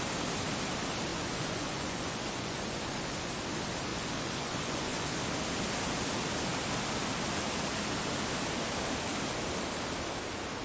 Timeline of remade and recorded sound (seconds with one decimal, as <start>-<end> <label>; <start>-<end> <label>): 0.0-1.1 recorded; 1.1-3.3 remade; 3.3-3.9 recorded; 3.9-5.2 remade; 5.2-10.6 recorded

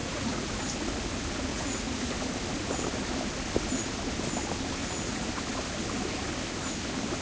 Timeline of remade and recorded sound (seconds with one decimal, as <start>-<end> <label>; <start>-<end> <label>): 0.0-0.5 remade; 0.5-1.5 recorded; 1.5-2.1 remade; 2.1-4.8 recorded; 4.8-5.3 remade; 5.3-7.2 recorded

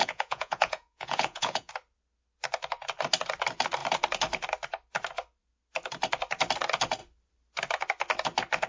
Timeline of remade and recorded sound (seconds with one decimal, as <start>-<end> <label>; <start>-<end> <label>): 0.0-1.7 remade; 1.7-8.7 recorded

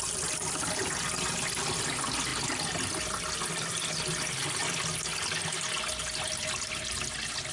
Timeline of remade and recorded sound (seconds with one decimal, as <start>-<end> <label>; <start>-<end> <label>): 0.0-7.5 recorded

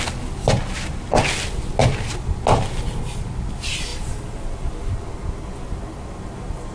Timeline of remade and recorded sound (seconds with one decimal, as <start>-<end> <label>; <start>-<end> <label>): 0.0-6.7 recorded